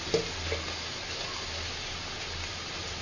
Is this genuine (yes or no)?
yes